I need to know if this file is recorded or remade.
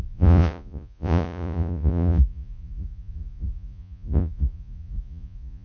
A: remade